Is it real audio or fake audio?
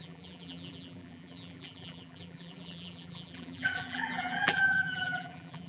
fake